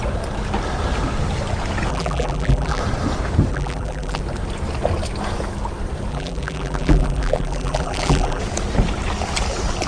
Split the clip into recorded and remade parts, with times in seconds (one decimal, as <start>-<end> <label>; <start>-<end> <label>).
0.0-1.9 recorded; 1.9-2.8 remade; 2.8-3.5 recorded; 3.5-4.2 remade; 4.2-6.1 recorded; 6.1-8.4 remade; 8.4-9.9 recorded